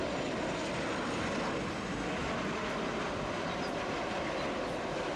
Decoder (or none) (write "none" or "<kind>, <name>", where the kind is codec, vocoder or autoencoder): none